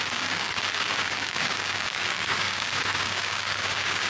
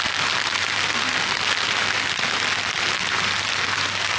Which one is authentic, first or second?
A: second